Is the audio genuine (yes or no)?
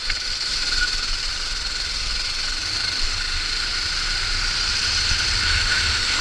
yes